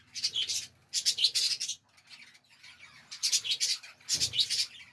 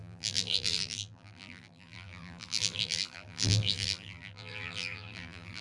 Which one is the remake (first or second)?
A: second